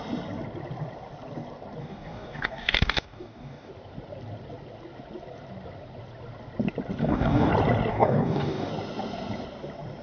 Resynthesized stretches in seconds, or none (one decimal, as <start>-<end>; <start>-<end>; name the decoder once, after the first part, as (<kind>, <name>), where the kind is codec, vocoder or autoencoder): 1.8-3.7 (codec, DAC); 7.0-7.5; 7.9-8.7